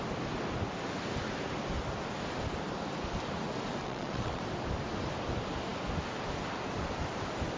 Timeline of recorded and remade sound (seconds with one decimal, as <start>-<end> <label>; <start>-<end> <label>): 0.0-3.8 recorded; 3.8-4.4 remade; 4.4-7.6 recorded